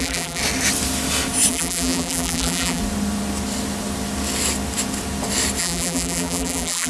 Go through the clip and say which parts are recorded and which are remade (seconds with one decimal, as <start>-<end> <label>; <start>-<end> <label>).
0.0-0.4 remade; 0.4-1.5 recorded; 1.5-2.8 remade; 2.8-5.6 recorded; 5.6-6.9 remade